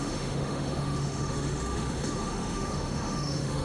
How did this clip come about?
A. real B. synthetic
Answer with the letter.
B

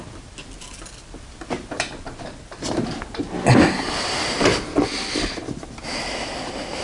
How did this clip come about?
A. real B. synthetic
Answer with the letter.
A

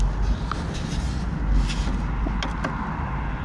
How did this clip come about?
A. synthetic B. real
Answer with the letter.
B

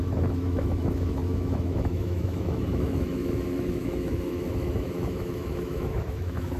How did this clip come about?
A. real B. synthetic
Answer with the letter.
B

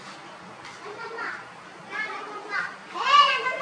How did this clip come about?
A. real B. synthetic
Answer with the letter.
A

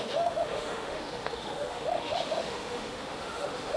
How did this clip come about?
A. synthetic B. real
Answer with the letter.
A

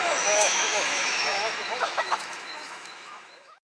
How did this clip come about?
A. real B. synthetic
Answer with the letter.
B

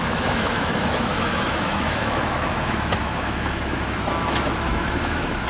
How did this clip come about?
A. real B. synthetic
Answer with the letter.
B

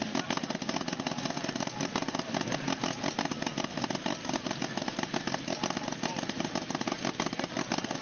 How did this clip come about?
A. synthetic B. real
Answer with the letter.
B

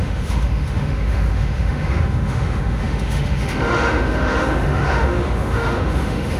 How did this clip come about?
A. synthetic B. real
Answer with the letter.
A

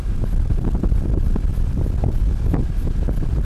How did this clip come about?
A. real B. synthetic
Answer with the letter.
A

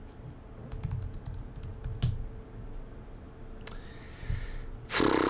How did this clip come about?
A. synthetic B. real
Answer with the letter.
B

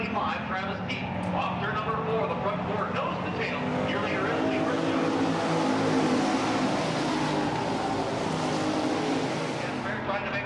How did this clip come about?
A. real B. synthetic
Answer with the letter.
A